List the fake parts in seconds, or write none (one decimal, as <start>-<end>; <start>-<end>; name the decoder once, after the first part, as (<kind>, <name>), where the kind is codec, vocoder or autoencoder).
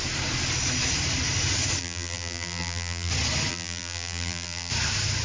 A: 1.8-3.1 (vocoder, BigVGAN v2); 3.5-4.7